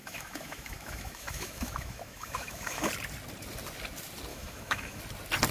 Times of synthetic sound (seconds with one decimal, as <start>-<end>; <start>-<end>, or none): 0.0-2.9; 4.3-5.0